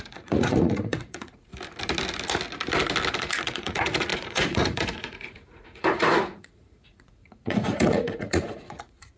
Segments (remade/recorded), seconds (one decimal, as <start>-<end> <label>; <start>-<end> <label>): 0.0-1.5 remade; 1.5-3.2 recorded; 3.2-9.2 remade